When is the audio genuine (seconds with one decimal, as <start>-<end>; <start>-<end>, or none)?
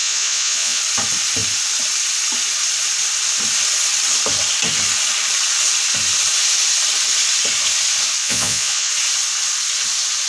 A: 0.8-8.2; 8.9-10.3